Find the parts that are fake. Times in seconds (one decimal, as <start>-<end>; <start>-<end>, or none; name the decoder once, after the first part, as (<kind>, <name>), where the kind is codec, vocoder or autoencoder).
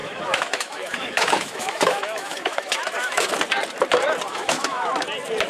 0.0-3.3 (autoencoder, DAC-VAE); 4.3-4.9